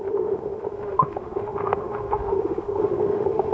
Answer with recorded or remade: remade